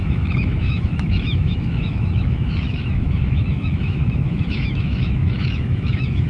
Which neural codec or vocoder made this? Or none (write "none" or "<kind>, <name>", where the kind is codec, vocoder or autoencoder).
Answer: autoencoder, DAC-VAE